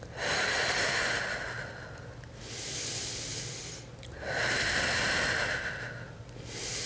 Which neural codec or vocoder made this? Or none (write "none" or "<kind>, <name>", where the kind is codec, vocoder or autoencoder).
none